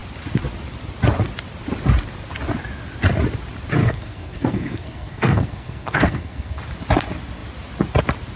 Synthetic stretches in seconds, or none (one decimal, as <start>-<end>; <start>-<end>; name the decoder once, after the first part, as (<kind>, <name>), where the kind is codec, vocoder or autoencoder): 3.8-6.6 (codec, SNAC)